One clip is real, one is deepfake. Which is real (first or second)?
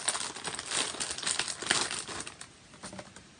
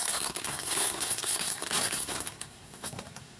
first